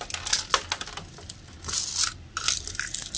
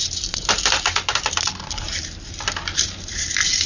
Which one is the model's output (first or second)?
second